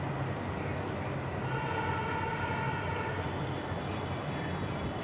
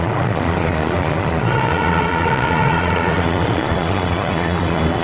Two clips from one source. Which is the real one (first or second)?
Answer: first